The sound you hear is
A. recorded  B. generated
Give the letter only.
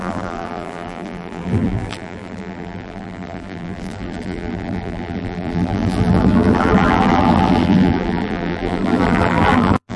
B